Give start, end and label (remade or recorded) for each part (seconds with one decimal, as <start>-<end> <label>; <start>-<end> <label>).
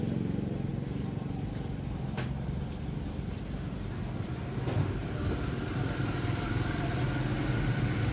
0.0-5.0 recorded; 5.0-6.5 remade; 6.5-8.1 recorded